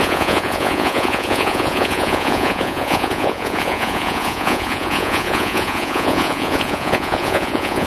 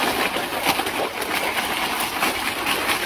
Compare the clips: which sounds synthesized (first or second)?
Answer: first